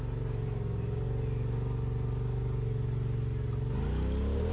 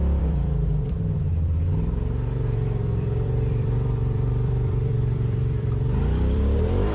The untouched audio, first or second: first